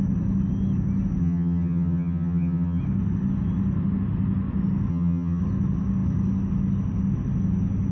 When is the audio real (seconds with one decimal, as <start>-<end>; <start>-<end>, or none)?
0.0-1.2; 2.8-4.9; 5.4-7.9